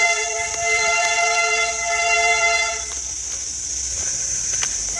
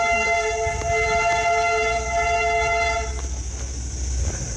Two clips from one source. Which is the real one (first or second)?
second